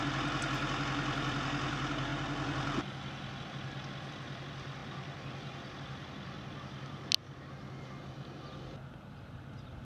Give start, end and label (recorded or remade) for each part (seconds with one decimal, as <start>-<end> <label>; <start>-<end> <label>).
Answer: 0.0-9.8 recorded